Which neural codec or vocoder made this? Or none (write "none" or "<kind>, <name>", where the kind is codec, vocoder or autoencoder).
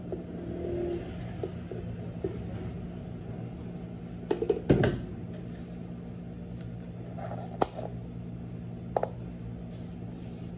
none